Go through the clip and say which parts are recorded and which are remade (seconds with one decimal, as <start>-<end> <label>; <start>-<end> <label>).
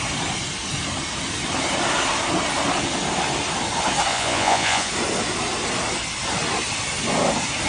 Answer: 0.0-4.1 recorded; 4.1-4.9 remade; 4.9-7.7 recorded